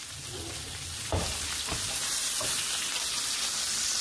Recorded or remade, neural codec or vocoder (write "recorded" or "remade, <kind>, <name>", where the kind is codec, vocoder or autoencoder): recorded